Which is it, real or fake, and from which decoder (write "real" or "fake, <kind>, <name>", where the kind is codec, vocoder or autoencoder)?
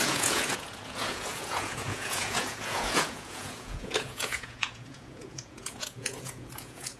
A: fake, vocoder, Vocos